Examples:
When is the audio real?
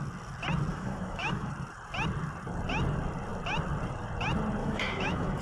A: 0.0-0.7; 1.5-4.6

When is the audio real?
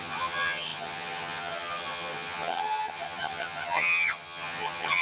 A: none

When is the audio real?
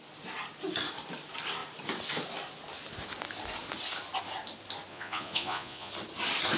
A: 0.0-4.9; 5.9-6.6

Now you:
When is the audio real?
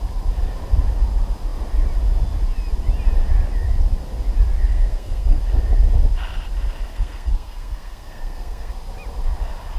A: 0.0-4.7; 5.4-6.9; 8.7-9.8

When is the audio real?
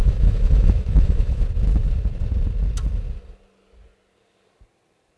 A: 1.4-5.2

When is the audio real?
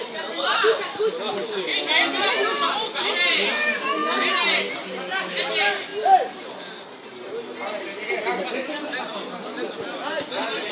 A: 0.0-10.7